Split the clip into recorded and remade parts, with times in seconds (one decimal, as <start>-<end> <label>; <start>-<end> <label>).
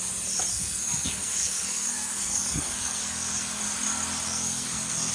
0.0-0.5 recorded; 0.5-3.6 remade; 3.6-4.3 recorded; 4.3-5.1 remade